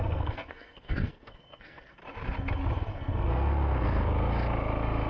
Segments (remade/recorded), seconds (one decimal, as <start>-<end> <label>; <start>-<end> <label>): 0.0-2.0 remade; 2.0-2.9 recorded; 2.9-4.0 remade; 4.0-5.1 recorded